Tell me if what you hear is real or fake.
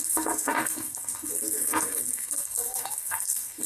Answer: fake